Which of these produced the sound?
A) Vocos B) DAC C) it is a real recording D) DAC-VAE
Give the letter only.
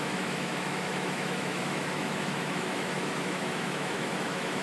D